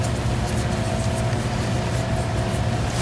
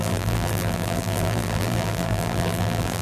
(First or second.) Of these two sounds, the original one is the first